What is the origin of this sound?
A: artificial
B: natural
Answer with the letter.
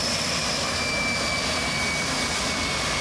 B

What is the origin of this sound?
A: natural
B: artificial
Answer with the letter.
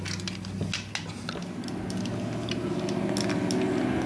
A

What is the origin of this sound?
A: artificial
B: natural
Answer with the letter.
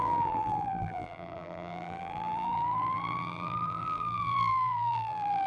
A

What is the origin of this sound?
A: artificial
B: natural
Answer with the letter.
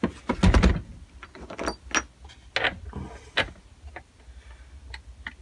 B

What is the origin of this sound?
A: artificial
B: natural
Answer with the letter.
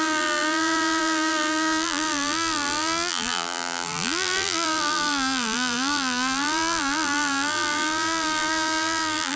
A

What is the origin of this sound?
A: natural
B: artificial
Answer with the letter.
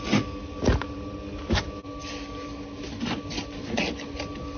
A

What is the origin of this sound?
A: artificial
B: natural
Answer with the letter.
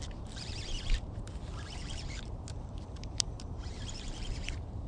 A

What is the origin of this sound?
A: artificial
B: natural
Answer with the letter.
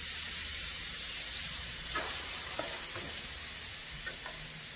A